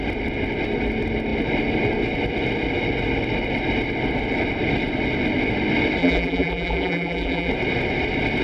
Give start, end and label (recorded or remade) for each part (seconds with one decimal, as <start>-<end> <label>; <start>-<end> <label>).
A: 0.0-6.0 recorded; 6.0-7.5 remade; 7.5-8.4 recorded